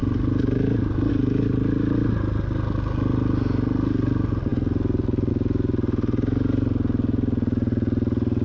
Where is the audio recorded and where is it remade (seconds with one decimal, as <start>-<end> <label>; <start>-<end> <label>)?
0.0-8.4 recorded